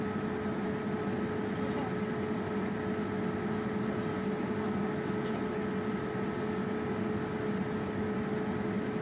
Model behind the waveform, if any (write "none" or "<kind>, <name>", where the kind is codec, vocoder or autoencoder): none